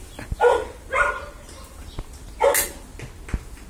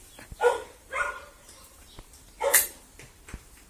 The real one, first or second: first